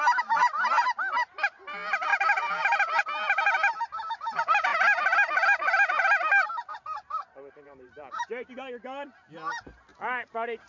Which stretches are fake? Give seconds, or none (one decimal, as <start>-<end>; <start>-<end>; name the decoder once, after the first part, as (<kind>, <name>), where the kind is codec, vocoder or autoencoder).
2.1-3.0 (vocoder, BigVGAN v2); 4.7-8.5